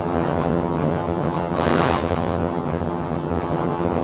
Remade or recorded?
remade